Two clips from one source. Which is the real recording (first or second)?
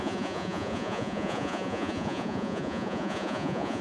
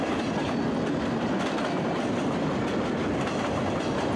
second